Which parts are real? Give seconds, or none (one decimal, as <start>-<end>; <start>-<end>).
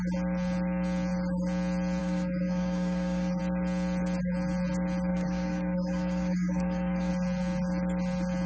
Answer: 0.0-2.0; 3.4-5.1; 7.1-8.5